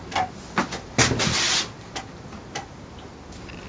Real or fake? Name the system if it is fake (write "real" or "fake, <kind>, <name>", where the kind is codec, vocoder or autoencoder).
real